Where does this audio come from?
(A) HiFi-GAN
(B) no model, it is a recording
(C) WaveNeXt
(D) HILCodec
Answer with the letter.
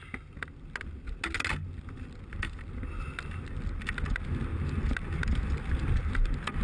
B